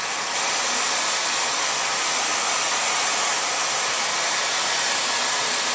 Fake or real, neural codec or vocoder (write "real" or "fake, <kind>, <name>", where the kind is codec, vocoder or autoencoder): real